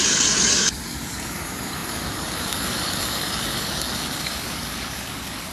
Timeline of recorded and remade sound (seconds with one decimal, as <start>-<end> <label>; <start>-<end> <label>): 0.0-5.5 remade